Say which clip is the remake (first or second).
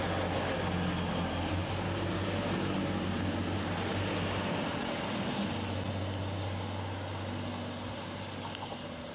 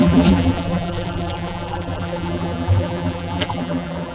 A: second